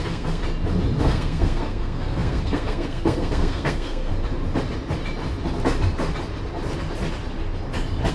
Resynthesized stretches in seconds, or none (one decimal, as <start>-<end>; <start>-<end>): 0.0-0.4; 1.0-4.1